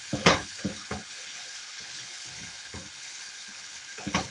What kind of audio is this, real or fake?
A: fake